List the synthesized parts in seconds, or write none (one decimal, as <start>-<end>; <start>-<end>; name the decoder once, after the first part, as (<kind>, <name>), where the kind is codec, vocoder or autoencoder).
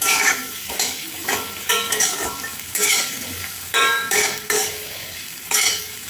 0.0-6.1 (codec, DAC)